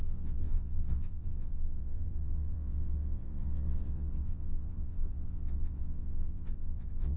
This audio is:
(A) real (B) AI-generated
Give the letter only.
B